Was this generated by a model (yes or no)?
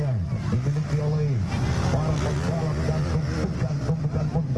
no